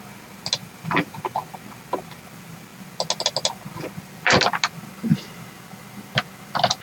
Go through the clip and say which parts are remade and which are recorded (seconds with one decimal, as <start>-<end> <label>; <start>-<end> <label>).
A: 0.0-0.6 recorded; 0.6-1.3 remade; 1.3-6.8 recorded